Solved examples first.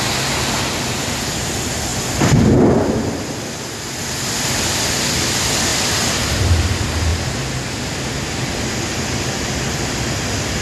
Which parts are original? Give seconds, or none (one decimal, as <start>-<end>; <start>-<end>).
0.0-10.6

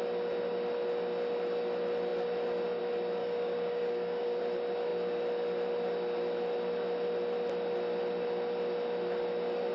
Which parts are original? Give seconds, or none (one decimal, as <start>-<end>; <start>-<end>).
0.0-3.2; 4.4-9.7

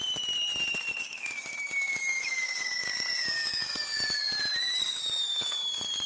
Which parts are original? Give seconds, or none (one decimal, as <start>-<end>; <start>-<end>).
0.0-1.0; 4.3-4.8